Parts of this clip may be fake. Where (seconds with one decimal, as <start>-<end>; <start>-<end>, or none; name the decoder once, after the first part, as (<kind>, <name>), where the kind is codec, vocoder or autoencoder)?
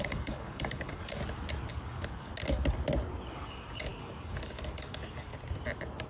0.0-1.2 (codec, DAC); 1.7-2.3; 3.3-5.3